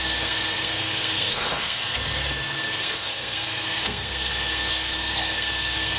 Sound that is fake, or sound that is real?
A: fake